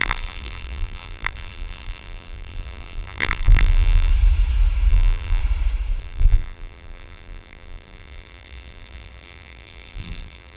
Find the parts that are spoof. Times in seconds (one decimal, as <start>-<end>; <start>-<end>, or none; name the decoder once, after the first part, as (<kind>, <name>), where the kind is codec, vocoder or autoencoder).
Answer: 0.0-4.1 (vocoder, BigVGAN v2); 4.9-5.4; 6.0-10.6